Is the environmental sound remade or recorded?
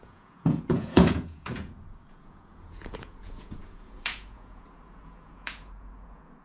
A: remade